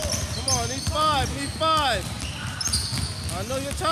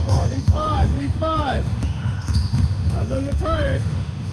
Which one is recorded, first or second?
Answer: first